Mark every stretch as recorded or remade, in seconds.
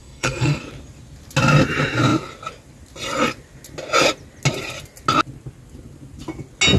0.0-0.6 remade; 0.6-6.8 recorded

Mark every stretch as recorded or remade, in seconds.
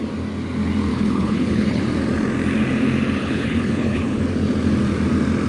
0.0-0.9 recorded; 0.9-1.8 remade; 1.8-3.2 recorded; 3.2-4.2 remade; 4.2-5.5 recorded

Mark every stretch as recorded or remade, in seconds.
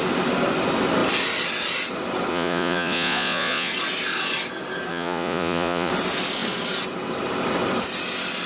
0.0-2.3 recorded; 2.3-3.7 remade; 3.7-4.9 recorded; 4.9-5.9 remade; 5.9-8.5 recorded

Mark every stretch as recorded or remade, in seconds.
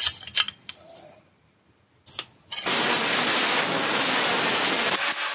0.0-5.3 recorded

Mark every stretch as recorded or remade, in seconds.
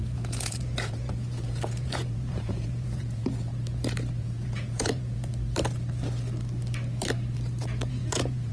0.0-3.5 remade; 3.5-4.2 recorded; 4.2-5.3 remade; 5.3-7.9 recorded; 7.9-8.5 remade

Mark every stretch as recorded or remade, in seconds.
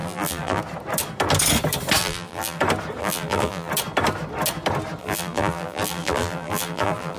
0.0-0.6 remade; 0.6-2.0 recorded; 2.0-2.6 remade; 2.6-3.0 recorded; 3.0-3.7 remade; 3.7-5.0 recorded; 5.0-7.2 remade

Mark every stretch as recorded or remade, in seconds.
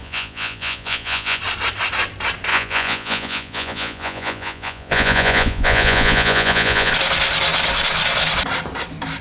0.0-1.4 remade; 1.4-2.5 recorded; 2.5-6.9 remade; 6.9-9.2 recorded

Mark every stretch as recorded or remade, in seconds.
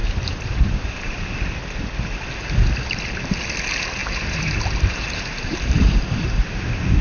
0.0-1.2 remade; 1.2-4.0 recorded; 4.0-7.0 remade